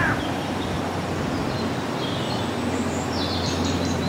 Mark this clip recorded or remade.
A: recorded